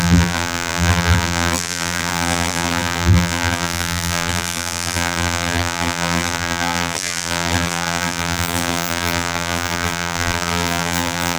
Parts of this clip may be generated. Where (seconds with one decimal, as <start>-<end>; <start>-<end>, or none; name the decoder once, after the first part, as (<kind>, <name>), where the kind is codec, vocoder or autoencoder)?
0.0-11.4 (vocoder, BigVGAN v2)